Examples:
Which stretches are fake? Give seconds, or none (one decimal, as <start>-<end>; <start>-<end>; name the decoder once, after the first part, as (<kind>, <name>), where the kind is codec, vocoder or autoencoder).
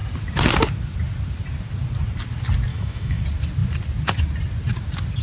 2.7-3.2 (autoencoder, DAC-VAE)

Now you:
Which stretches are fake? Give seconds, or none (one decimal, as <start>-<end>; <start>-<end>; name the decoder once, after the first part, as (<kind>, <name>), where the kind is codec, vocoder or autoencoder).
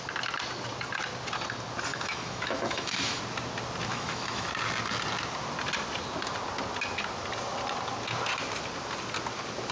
1.9-3.2 (autoencoder, DAC-VAE); 3.9-4.5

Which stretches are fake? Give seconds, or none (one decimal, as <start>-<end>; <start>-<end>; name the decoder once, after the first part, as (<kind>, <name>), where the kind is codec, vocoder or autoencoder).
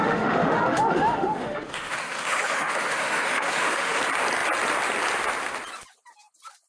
0.0-4.0 (autoencoder, DAC-VAE)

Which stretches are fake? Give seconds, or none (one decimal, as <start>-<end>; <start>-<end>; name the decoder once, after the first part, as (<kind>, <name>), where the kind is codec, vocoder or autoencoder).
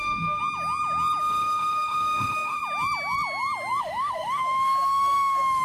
0.0-0.4 (autoencoder, DAC-VAE); 1.2-2.6; 3.8-5.6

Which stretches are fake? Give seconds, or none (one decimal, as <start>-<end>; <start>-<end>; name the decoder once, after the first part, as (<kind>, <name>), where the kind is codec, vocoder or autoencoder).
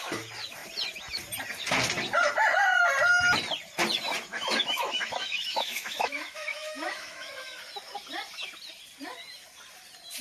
4.3-7.6 (autoencoder, DAC-VAE)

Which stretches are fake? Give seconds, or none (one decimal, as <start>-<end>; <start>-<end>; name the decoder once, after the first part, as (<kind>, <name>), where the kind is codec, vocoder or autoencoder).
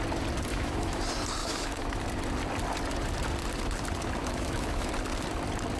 0.5-1.0 (autoencoder, DAC-VAE); 1.4-2.0; 4.2-4.9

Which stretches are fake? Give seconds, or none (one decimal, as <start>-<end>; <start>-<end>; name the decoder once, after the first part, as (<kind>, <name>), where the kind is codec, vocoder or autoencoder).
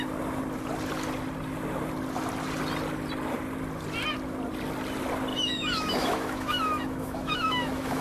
5.3-8.0 (autoencoder, DAC-VAE)